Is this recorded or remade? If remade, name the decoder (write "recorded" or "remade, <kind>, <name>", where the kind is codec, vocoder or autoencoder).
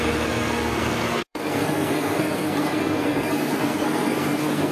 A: remade, codec, SNAC